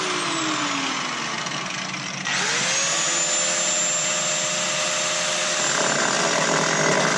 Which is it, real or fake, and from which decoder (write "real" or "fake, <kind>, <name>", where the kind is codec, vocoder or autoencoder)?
real